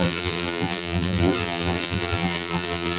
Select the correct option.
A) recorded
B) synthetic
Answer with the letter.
B